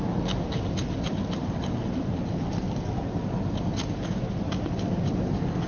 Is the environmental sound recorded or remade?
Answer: recorded